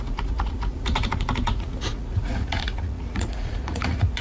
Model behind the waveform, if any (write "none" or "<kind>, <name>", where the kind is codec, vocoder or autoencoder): vocoder, Vocos